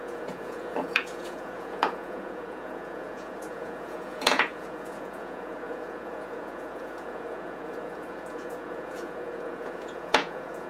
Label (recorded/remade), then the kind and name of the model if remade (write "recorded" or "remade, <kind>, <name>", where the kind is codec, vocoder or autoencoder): remade, vocoder, Vocos